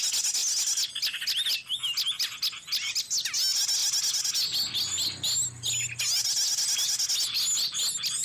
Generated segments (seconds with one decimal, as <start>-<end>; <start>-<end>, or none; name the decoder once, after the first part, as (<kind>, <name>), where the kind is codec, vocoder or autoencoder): none